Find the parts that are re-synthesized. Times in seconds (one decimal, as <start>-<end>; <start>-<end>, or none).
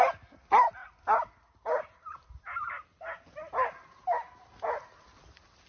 none